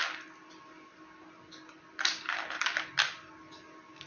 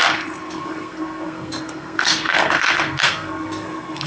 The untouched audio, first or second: first